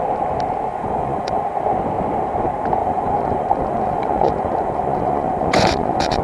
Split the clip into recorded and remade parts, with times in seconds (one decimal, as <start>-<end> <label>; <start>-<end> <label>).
0.0-0.7 recorded; 0.7-1.4 remade; 1.4-2.8 recorded; 2.8-6.2 remade